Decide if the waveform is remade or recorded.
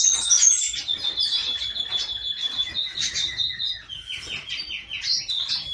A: recorded